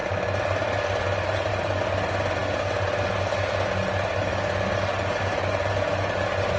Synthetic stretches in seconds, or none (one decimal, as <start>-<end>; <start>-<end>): none